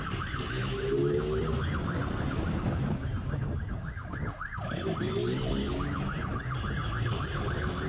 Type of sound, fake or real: real